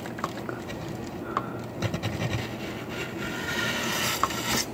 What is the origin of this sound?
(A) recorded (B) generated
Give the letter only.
A